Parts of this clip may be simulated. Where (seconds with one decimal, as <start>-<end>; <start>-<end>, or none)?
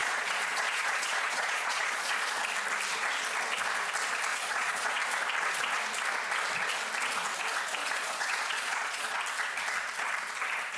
0.0-2.4; 4.3-5.0; 7.8-9.2